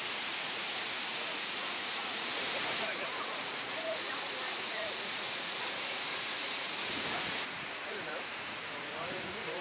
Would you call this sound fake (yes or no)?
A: yes